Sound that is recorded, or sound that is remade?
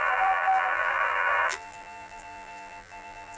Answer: remade